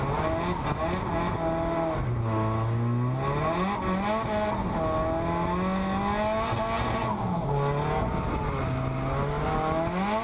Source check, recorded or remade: recorded